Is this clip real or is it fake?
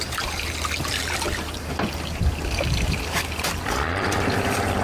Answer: fake